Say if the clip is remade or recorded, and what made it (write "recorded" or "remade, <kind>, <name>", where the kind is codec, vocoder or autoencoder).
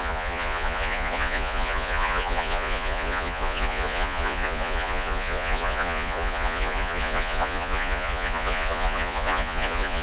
remade, vocoder, Vocos